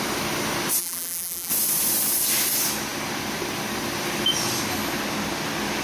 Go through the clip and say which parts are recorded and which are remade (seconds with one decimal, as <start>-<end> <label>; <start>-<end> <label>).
0.0-0.8 recorded; 0.8-1.5 remade; 1.5-5.8 recorded